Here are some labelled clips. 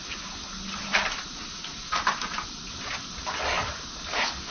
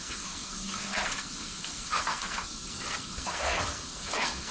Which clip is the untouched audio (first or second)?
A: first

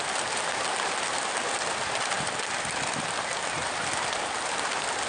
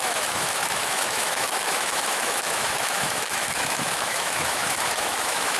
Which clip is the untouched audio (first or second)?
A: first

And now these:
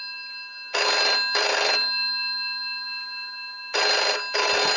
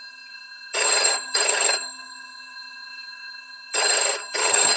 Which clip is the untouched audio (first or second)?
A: first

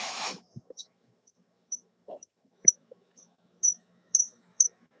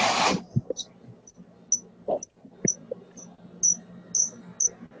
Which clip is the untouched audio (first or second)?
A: second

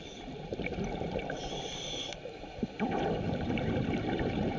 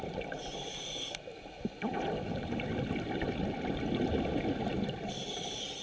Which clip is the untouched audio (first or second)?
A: second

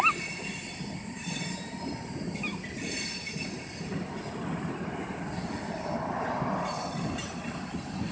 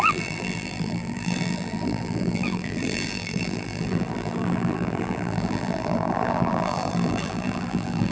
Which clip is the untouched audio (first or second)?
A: first